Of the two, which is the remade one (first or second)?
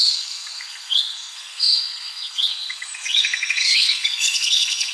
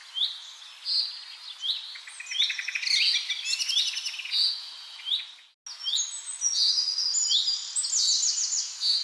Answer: first